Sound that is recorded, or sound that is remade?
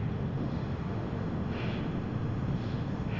remade